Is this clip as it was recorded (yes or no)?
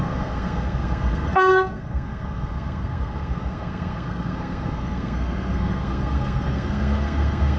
no